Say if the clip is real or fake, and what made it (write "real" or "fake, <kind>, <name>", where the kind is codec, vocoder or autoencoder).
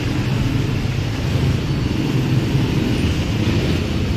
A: real